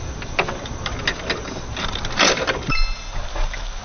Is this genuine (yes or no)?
yes